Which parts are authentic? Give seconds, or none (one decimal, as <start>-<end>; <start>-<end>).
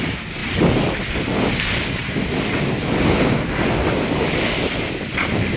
0.0-5.6